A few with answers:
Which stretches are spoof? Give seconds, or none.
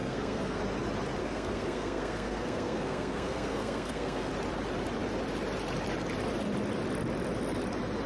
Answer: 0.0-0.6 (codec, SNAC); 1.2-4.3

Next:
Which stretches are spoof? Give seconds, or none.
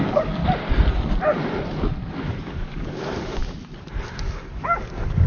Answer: 0.0-0.4 (codec, DAC); 2.4-3.4; 4.2-5.3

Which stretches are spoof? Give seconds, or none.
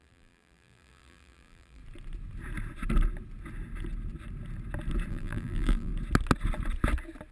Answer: 0.0-1.8 (vocoder, BigVGAN v2); 5.1-5.9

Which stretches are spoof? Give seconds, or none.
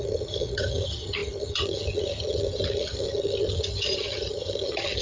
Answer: 0.0-5.0 (vocoder, HiFi-GAN)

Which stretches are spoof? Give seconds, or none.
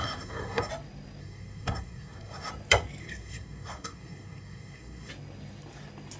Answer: 0.0-0.7 (codec, SNAC); 1.2-2.5; 3.0-5.1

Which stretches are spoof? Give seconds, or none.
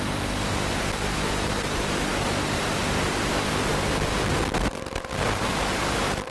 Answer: none